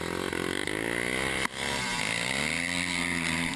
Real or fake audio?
real